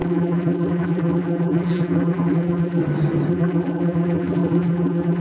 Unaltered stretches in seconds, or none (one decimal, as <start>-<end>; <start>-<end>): 2.8-3.3